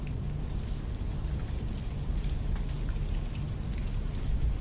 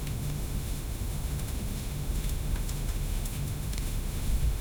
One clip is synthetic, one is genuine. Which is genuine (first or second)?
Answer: first